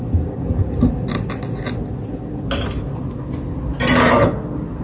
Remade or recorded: recorded